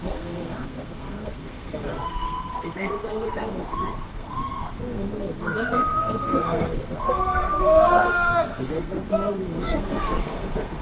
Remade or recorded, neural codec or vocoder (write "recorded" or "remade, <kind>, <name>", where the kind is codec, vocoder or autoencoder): remade, codec, SNAC